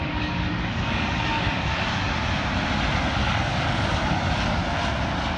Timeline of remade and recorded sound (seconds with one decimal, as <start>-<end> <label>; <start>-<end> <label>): 0.0-2.2 remade; 2.2-3.2 recorded; 3.2-4.6 remade; 4.6-5.4 recorded